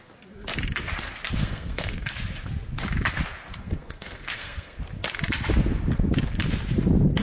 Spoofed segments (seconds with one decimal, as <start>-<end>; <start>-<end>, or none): 1.4-2.1; 3.6-4.8